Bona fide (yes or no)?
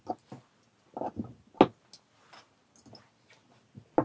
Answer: yes